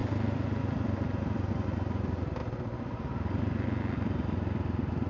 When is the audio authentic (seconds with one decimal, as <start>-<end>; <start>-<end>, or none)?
0.0-5.1